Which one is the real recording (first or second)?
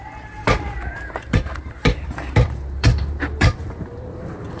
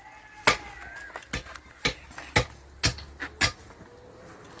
second